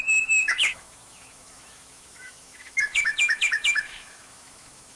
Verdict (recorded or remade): remade